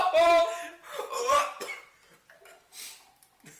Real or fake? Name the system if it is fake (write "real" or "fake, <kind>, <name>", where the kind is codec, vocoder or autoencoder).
real